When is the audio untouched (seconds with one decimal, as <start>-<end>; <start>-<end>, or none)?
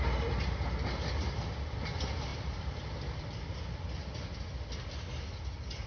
0.0-5.9